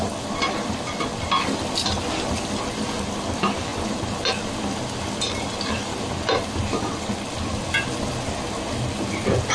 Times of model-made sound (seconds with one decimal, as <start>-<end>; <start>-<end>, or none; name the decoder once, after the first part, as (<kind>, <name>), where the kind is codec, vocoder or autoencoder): none